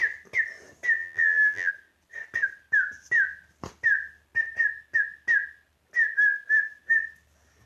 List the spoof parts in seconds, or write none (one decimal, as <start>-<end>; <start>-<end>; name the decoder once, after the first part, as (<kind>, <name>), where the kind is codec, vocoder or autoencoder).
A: 1.0-1.7 (vocoder, BigVGAN v2)